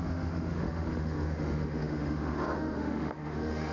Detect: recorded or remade remade